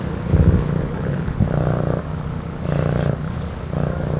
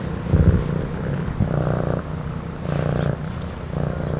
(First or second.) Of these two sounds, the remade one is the first